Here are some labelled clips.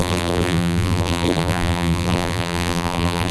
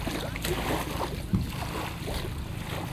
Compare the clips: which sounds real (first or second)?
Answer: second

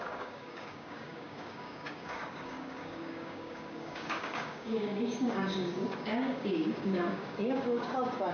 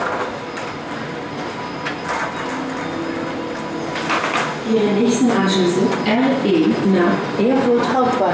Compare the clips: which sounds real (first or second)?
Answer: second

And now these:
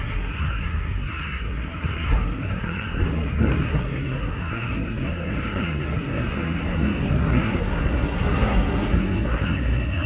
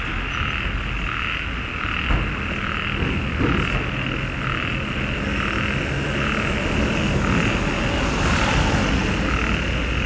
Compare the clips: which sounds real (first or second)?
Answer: second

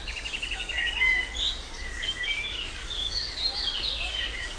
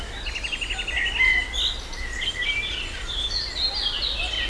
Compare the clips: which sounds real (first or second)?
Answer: second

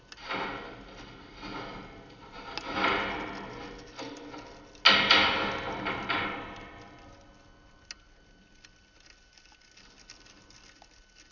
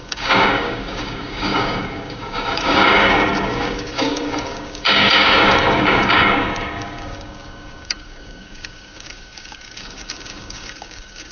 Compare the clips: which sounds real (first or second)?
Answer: first